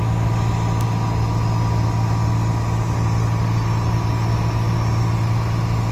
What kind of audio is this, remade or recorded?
recorded